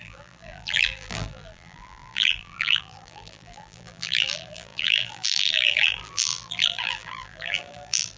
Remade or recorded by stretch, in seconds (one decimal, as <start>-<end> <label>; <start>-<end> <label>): 0.0-8.2 remade